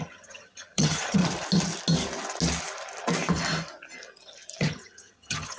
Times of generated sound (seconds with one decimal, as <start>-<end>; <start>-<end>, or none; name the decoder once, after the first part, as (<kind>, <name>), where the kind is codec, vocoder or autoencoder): 0.0-1.2 (vocoder, HiFi-GAN); 4.6-5.6